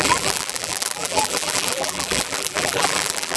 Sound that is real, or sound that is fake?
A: fake